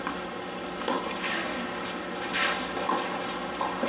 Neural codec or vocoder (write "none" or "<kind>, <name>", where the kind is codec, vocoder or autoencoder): none